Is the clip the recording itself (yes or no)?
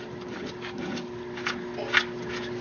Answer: yes